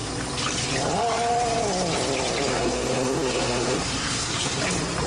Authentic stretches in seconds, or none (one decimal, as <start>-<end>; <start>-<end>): 0.0-2.5; 4.6-5.1